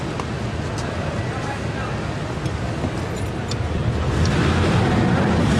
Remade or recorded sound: recorded